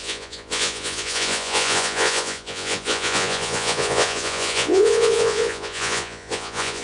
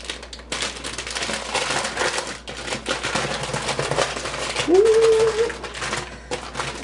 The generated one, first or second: first